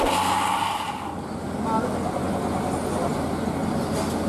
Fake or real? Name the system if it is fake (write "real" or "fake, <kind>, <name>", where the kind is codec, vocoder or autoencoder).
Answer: real